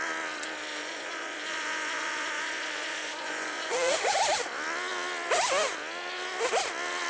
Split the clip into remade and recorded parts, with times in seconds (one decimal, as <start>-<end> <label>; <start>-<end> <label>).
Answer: 0.0-0.7 recorded; 0.7-4.2 remade; 4.2-7.1 recorded